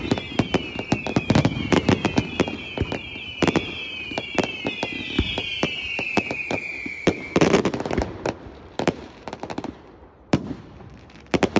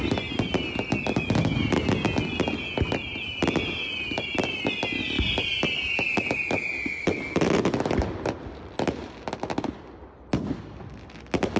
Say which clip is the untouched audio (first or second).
second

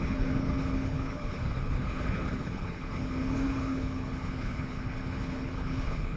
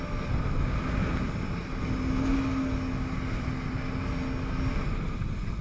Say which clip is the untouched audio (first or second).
second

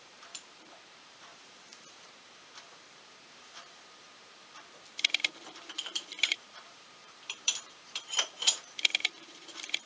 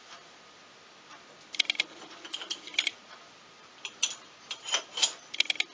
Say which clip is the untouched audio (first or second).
second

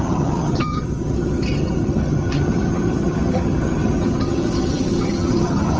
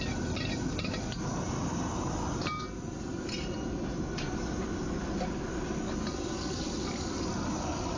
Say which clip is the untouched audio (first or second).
second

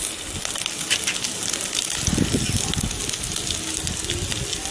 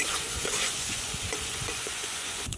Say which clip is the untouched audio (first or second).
first